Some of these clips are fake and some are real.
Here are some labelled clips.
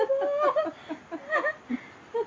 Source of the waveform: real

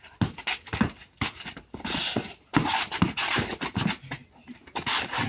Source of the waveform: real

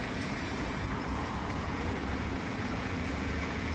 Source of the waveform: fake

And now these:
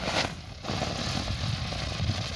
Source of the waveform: real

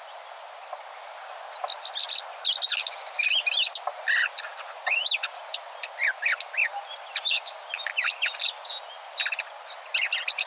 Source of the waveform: real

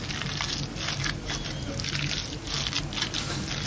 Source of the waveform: real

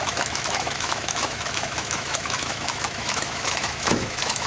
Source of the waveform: fake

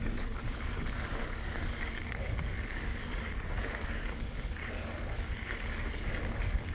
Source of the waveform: fake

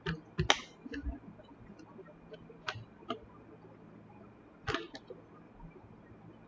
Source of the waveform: real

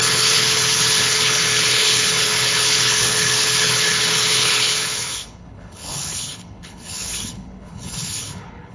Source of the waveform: fake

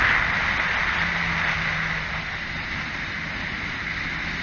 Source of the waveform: real